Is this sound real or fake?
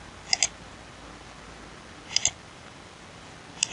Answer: real